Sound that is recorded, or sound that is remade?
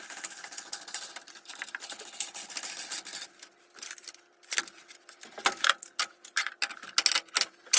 recorded